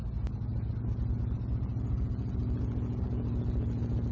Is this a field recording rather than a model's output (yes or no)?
yes